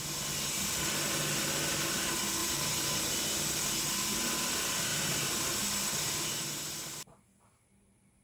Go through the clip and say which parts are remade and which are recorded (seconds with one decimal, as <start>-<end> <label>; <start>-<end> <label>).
0.0-2.4 recorded; 2.4-3.1 remade; 3.1-4.9 recorded; 4.9-5.6 remade; 5.6-8.2 recorded

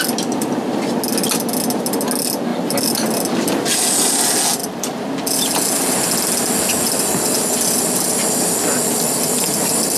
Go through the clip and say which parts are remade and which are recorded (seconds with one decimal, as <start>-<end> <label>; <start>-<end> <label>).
0.0-2.5 recorded; 2.5-3.5 remade; 3.5-10.0 recorded